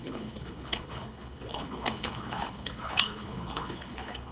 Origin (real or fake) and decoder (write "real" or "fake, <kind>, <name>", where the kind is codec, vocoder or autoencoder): fake, codec, HILCodec